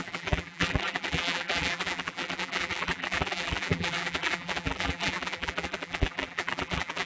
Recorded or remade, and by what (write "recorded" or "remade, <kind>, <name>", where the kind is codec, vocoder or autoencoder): remade, vocoder, BigVGAN v2